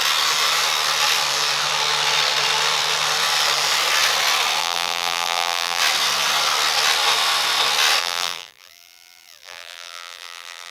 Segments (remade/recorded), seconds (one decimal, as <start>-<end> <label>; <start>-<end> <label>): 0.0-4.6 recorded; 4.6-5.8 remade; 5.8-8.0 recorded; 8.0-10.7 remade